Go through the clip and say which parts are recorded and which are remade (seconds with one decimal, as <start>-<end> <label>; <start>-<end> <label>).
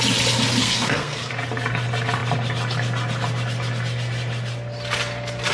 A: 0.0-0.6 recorded; 0.6-1.3 remade; 1.3-5.5 recorded